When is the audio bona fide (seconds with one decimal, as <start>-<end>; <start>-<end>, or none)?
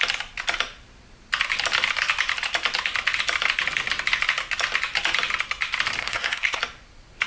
0.0-6.0; 6.6-7.3